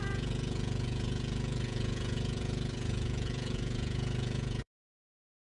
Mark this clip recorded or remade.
remade